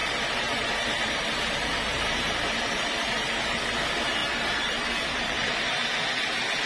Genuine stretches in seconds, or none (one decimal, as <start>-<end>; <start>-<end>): 3.6-4.2; 5.8-6.7